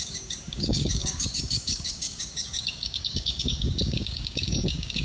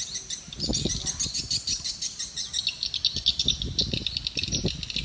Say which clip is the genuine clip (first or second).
second